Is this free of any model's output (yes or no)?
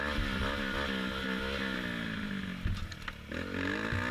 yes